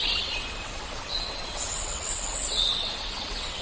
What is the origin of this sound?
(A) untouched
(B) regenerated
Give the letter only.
B